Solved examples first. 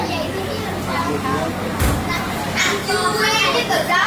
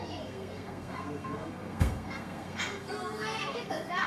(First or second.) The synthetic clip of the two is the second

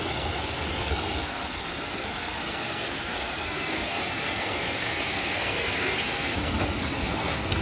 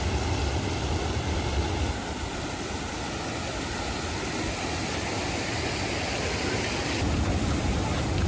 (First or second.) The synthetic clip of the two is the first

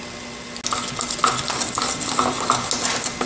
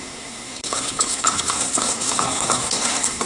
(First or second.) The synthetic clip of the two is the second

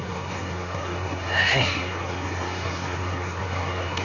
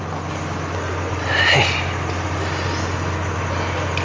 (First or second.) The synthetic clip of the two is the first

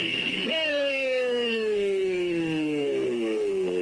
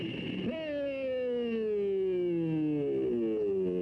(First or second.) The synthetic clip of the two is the first